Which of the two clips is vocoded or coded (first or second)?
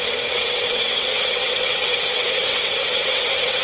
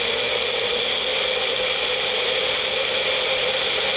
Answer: first